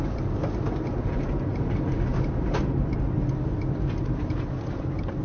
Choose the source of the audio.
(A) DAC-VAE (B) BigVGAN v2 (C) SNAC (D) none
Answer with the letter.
D